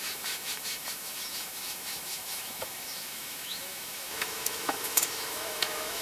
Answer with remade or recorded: remade